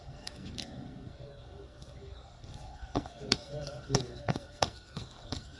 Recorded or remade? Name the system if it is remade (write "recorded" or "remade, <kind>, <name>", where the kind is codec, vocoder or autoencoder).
remade, codec, SNAC